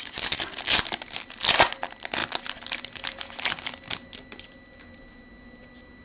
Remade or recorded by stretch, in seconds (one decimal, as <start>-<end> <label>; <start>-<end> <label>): 0.0-6.0 recorded